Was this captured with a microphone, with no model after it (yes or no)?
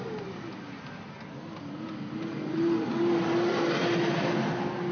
yes